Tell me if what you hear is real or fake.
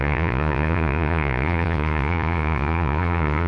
fake